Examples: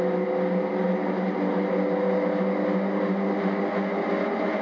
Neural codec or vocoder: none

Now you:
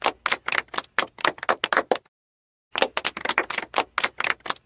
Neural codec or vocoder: none